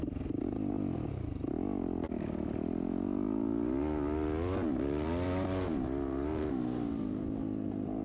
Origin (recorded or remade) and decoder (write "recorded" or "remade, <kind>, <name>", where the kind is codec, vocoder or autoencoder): recorded